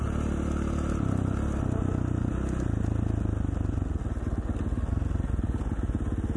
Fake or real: real